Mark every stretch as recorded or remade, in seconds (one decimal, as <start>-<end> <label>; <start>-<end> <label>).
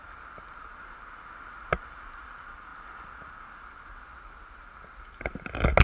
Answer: 0.0-5.8 recorded